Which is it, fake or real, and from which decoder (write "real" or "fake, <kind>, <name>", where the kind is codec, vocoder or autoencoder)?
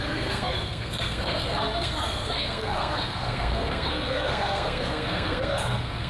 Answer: fake, codec, SNAC